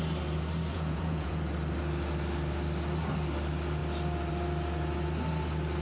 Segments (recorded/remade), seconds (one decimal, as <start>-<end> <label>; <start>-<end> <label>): 0.0-0.7 recorded; 0.7-1.4 remade; 1.4-5.8 recorded